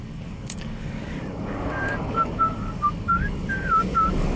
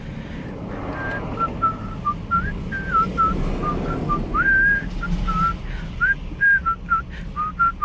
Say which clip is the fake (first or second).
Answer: first